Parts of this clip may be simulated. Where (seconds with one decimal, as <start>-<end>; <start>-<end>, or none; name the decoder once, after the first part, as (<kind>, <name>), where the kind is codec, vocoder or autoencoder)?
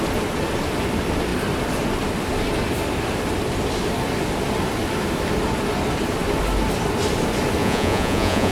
7.6-8.5 (vocoder, Vocos)